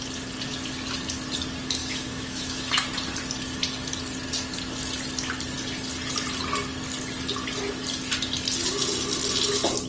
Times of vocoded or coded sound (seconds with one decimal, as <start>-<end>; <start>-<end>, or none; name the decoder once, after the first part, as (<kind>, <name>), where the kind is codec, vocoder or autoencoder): 1.8-2.7 (autoencoder, DAC-VAE)